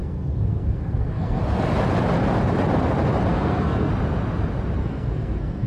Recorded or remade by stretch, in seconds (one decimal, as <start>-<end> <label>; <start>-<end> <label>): 0.0-1.4 remade; 1.4-3.3 recorded; 3.3-3.9 remade; 3.9-4.8 recorded; 4.8-5.7 remade